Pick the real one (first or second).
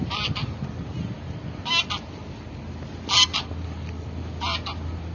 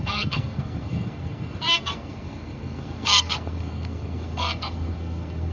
first